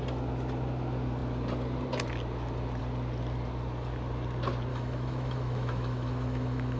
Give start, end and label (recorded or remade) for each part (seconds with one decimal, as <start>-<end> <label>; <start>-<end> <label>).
0.0-4.7 recorded; 4.7-6.8 remade